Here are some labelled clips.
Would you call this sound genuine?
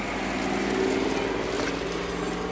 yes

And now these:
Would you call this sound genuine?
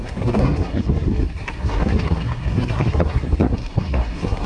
no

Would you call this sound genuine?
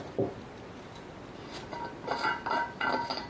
yes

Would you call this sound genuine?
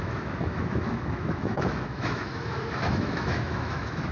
no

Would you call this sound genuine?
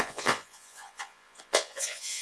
no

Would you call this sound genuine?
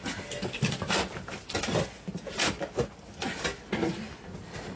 yes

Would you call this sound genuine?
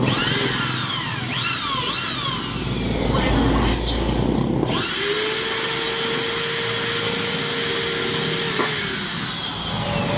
yes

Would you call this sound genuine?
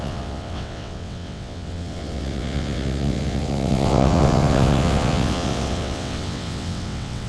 no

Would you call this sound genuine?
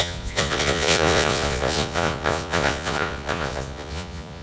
no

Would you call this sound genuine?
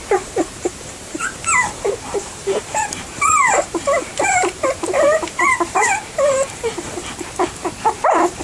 no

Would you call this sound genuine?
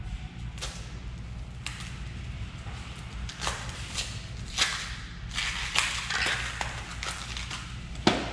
yes